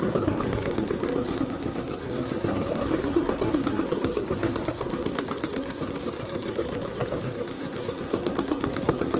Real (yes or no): no